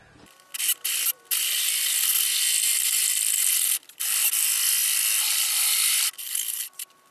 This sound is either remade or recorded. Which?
recorded